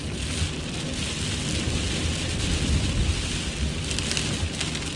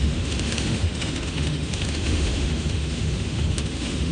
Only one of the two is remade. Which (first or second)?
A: second